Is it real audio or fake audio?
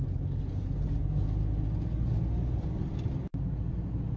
real